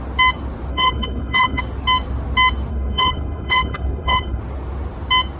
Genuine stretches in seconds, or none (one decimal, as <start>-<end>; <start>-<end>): 0.0-0.7; 1.6-2.7; 4.4-5.4